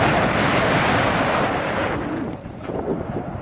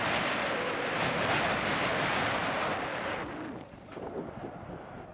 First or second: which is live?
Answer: second